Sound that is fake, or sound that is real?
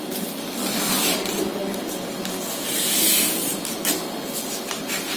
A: real